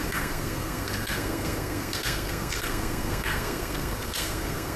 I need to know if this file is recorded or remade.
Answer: remade